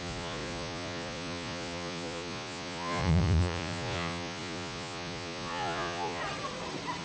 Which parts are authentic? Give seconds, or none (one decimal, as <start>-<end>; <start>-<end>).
6.2-7.0